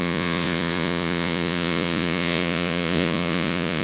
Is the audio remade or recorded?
remade